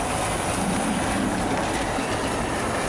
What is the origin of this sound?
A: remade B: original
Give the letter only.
B